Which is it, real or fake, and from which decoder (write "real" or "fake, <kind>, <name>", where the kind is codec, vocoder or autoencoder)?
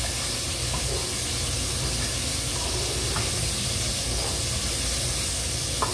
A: real